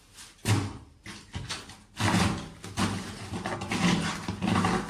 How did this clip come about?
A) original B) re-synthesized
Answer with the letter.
A